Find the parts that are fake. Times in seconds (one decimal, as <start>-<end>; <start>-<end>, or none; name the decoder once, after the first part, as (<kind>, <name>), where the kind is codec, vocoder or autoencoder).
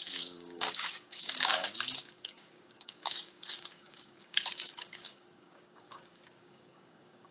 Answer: 0.0-7.3 (codec, DAC)